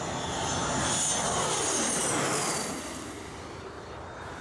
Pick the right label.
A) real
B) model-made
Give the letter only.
A